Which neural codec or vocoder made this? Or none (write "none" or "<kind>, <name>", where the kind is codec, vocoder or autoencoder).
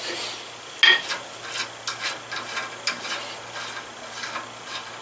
none